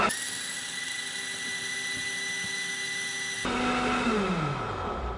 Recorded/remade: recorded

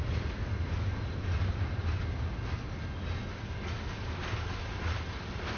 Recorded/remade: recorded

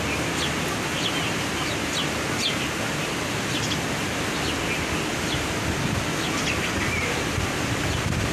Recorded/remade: recorded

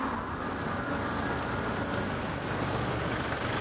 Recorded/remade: recorded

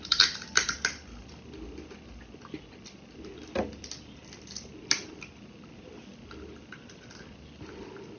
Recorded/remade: recorded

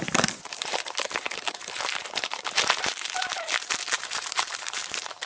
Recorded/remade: remade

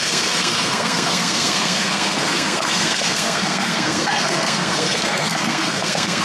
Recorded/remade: remade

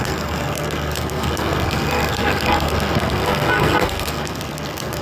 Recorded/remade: remade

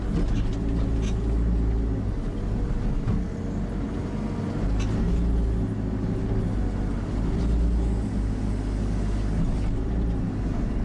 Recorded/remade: recorded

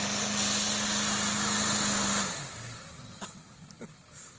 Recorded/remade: recorded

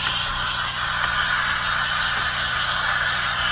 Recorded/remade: recorded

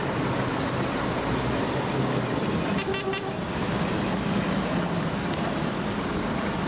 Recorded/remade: recorded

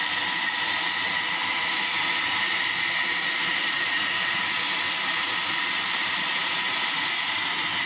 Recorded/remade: recorded